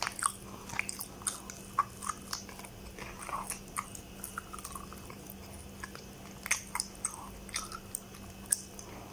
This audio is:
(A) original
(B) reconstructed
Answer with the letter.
A